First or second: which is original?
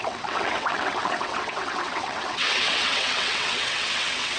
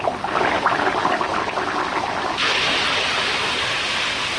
second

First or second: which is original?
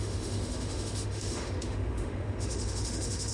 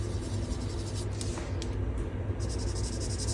second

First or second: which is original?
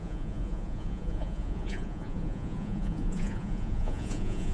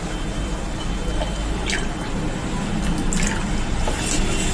second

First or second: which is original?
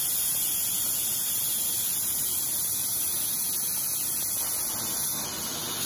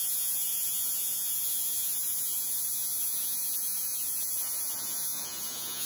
first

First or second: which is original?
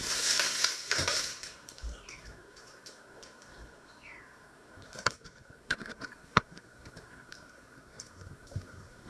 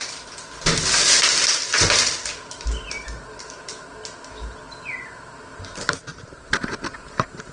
second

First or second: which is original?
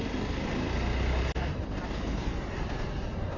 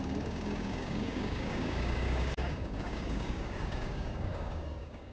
first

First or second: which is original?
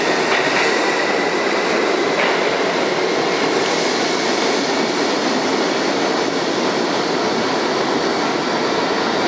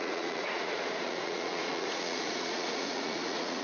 first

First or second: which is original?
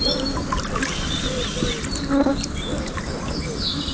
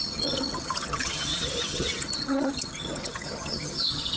first